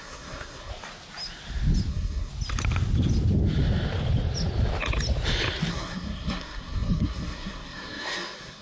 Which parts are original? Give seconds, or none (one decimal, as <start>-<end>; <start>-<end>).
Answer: 0.7-1.9; 2.3-5.7